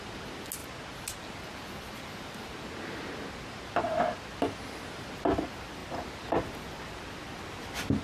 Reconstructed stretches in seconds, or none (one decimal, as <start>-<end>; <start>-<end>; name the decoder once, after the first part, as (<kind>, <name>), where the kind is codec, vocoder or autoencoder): 5.8-7.6 (vocoder, BigVGAN v2)

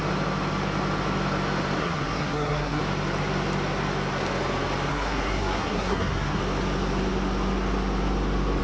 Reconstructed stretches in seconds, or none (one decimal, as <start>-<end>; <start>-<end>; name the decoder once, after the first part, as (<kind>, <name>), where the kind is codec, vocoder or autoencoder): 1.8-2.8 (codec, SNAC); 4.9-6.4